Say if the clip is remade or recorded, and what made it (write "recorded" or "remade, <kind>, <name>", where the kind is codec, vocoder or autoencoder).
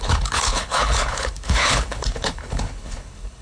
remade, codec, HILCodec